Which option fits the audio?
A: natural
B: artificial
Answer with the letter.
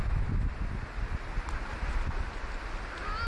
A